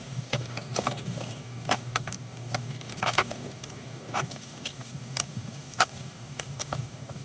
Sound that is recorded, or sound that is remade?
remade